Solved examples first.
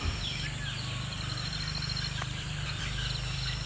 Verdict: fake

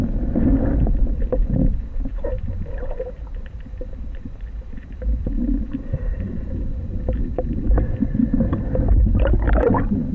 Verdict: fake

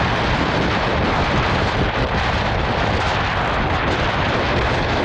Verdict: real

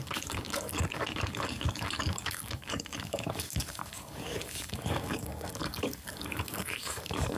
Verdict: fake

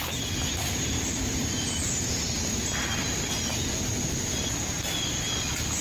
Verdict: real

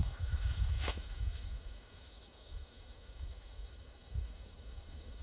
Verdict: fake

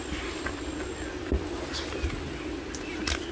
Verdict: real